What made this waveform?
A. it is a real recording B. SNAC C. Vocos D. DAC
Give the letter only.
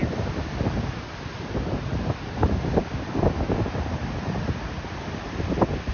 A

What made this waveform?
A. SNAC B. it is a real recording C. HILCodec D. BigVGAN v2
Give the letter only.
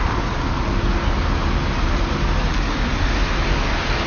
B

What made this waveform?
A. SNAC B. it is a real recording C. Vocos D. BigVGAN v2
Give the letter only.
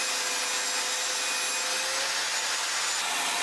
B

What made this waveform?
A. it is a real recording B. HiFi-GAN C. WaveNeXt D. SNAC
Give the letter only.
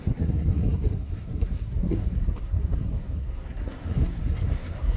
D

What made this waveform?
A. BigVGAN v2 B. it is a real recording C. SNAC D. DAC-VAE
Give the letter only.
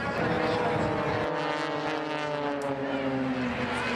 B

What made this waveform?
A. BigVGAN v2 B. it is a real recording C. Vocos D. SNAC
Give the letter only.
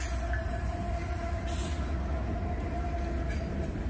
B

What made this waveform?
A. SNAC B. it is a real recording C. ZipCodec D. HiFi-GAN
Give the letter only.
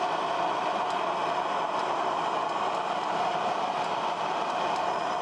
B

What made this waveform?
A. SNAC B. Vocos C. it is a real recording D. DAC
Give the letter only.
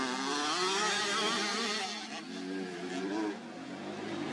C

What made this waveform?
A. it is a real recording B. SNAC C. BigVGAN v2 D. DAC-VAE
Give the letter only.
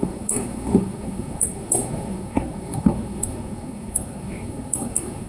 B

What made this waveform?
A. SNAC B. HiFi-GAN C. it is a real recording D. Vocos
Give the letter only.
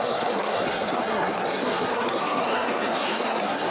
A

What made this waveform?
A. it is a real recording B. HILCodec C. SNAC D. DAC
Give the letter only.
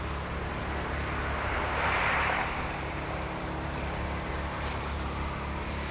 A